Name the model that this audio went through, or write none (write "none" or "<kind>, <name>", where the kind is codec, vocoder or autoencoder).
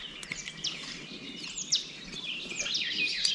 none